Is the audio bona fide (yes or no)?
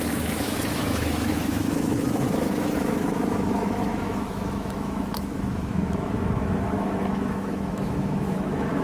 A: no